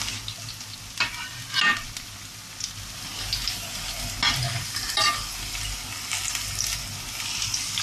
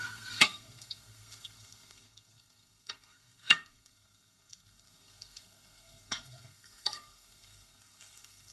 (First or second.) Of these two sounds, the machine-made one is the second